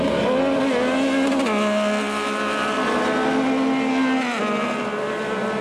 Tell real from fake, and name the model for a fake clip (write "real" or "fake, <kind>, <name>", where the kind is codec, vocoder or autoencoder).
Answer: real